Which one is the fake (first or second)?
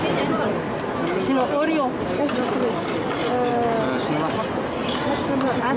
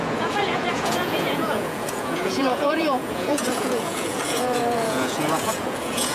second